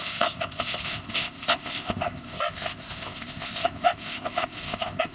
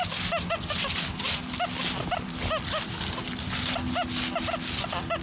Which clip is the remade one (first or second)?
first